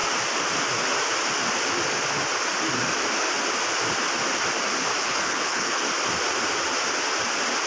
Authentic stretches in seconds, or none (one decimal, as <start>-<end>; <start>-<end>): 0.0-4.9; 5.8-7.7